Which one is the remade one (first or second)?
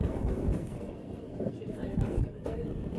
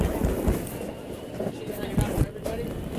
first